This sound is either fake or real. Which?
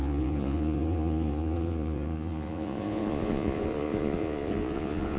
fake